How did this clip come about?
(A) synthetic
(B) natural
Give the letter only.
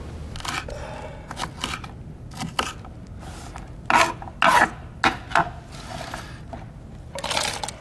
B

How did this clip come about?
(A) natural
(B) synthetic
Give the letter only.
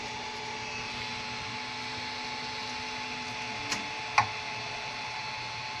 A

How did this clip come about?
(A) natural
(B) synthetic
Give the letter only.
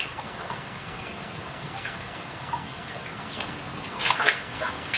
B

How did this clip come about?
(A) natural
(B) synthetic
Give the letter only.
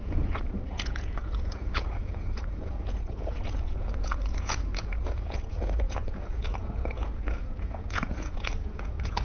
B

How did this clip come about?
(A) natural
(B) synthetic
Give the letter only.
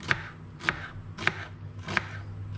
A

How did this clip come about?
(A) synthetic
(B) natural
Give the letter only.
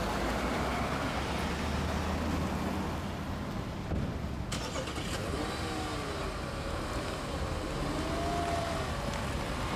B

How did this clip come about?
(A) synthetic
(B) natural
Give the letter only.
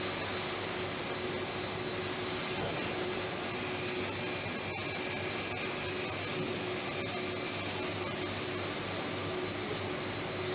B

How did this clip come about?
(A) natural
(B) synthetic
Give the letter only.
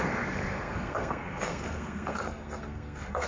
B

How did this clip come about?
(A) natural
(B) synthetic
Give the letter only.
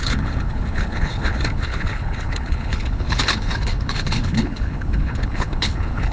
B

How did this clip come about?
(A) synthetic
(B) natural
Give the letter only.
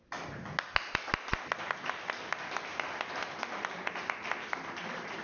B